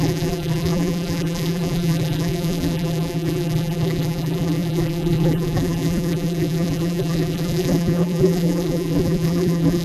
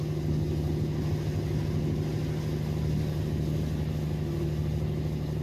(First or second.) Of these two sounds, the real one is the second